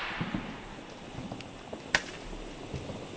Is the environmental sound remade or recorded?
recorded